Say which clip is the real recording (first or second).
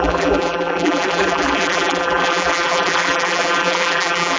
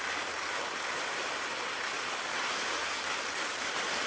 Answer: second